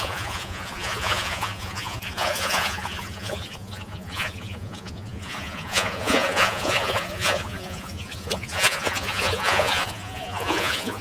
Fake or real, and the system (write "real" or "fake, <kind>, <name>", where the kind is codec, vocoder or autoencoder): fake, vocoder, Vocos